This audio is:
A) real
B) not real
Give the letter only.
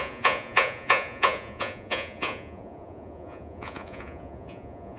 B